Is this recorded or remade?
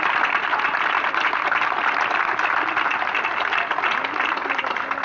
recorded